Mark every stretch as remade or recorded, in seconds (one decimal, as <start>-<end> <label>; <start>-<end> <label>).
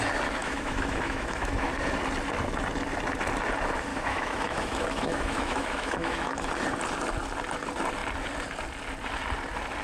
0.0-0.4 recorded; 0.4-1.7 remade; 1.7-3.9 recorded; 3.9-6.5 remade; 6.5-9.8 recorded